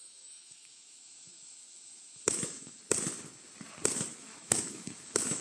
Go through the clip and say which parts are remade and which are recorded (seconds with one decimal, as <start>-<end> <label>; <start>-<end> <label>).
0.0-2.8 remade; 2.8-4.2 recorded; 4.2-5.4 remade